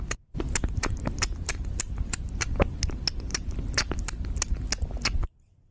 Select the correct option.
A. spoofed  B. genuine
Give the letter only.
B